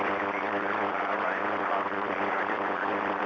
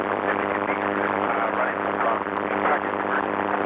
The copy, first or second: first